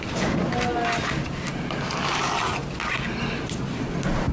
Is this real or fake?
real